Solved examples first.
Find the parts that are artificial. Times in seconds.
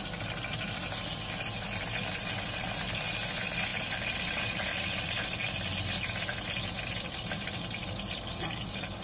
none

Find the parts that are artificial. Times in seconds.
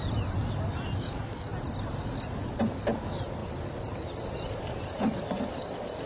3.4-5.6 (vocoder, BigVGAN v2)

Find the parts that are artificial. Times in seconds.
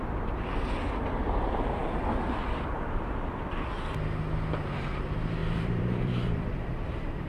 1.8-3.2 (vocoder, BigVGAN v2); 5.4-6.6